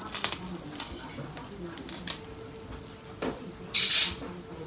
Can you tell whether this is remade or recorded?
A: recorded